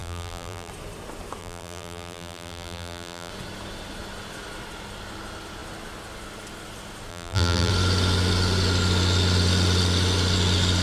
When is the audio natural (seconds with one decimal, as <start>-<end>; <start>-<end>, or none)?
0.7-1.4; 3.3-7.1; 7.7-10.8